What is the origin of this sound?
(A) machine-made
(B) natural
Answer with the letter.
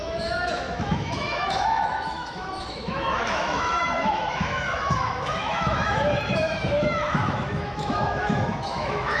A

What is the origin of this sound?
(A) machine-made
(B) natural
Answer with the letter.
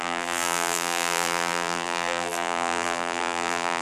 A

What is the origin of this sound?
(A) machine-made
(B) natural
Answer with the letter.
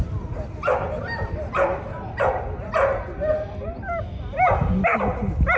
B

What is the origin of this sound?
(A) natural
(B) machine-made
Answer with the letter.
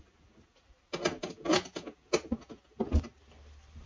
A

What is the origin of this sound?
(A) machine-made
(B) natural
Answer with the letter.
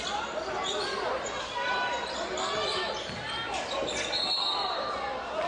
B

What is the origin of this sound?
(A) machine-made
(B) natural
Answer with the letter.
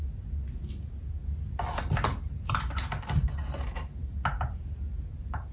B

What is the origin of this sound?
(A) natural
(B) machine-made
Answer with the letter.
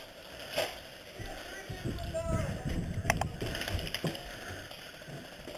A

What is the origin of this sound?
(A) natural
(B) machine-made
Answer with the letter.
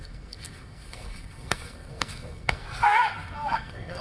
B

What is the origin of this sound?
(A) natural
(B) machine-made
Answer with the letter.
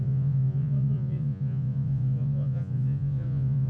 B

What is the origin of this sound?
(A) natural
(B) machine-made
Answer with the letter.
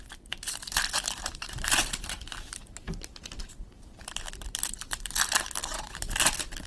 B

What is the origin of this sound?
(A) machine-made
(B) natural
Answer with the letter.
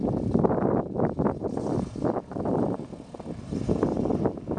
B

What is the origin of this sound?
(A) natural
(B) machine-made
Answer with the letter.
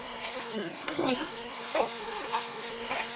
B